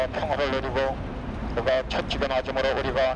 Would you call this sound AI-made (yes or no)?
no